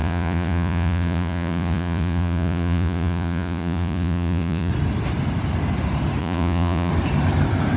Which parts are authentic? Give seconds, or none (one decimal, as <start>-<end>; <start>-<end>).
4.7-6.2; 6.9-7.8